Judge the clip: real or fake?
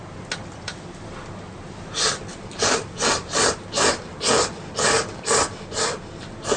real